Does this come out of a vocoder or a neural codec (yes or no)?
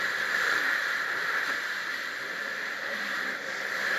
yes